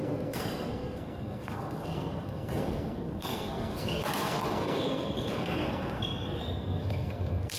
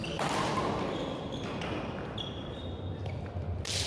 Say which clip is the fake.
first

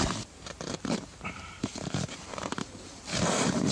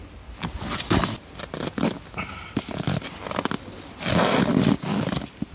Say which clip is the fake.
first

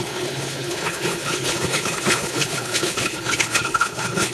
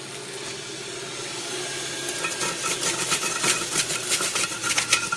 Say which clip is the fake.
first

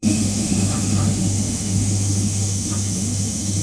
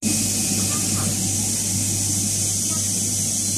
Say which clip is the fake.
first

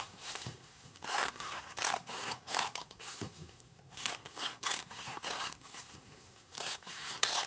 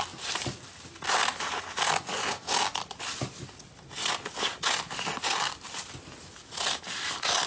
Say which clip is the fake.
first